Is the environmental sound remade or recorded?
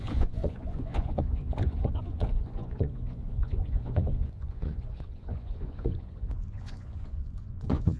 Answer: remade